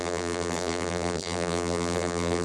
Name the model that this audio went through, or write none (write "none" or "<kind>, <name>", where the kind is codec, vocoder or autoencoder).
vocoder, BigVGAN v2